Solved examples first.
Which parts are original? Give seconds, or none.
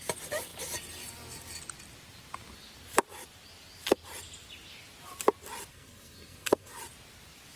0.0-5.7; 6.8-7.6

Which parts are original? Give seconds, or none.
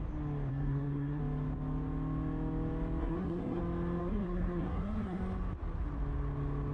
0.0-0.5; 1.2-3.0; 3.6-4.0; 5.2-6.7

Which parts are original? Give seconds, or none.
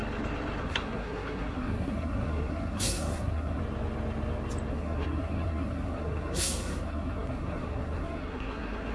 0.0-0.6; 3.6-4.7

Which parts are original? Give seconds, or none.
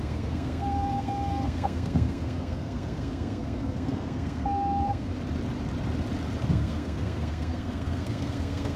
5.1-6.5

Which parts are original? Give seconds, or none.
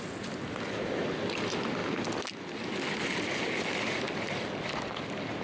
0.0-5.4